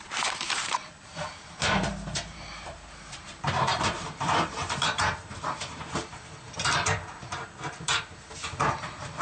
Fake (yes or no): yes